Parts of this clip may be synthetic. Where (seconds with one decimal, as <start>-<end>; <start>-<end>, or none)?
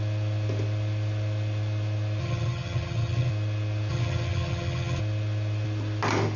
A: 2.2-3.3; 3.9-5.0